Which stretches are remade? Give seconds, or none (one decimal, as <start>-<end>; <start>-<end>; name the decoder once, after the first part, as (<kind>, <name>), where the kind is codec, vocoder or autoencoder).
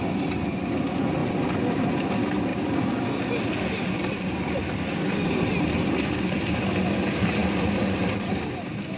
none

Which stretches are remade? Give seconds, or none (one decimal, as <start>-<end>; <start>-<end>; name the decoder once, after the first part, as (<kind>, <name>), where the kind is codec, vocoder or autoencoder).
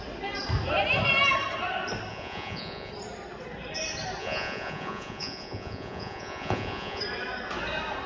2.1-2.9 (vocoder, Vocos); 4.2-7.0